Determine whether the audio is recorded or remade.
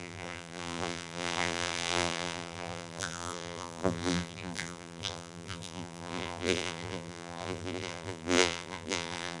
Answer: remade